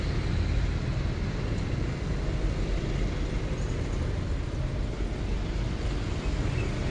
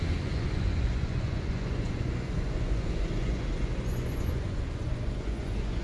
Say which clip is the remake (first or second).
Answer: second